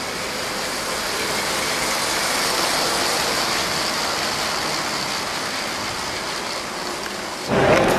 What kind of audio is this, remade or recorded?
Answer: recorded